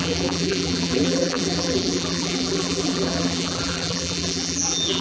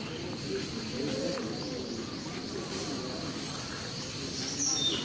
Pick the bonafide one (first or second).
second